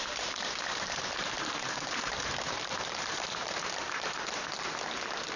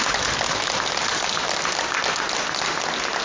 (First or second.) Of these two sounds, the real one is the second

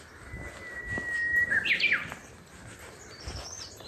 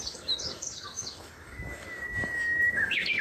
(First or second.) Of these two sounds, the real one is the first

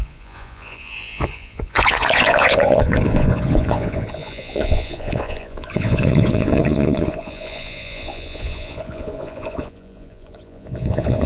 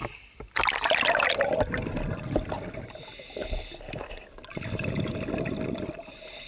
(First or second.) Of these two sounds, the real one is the second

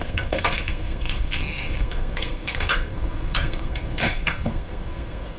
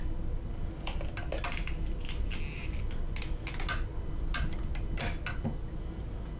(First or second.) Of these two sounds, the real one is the second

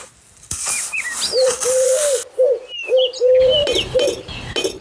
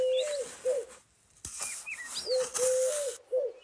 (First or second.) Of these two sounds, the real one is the second